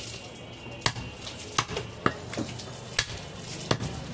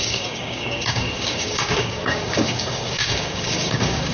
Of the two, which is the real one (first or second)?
first